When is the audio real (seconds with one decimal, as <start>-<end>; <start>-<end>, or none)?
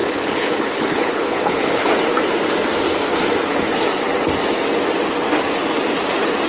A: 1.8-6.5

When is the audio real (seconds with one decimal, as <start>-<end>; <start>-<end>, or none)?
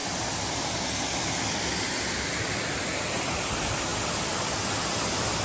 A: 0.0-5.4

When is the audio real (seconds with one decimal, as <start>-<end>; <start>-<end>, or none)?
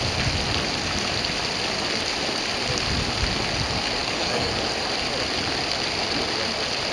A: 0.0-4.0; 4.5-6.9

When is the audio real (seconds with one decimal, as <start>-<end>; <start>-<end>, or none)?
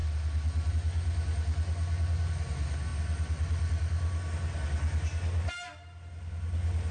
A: 0.0-6.9